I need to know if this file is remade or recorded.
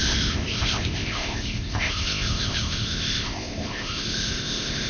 remade